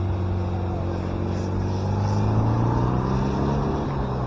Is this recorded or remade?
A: recorded